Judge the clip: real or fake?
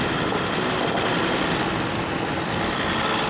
real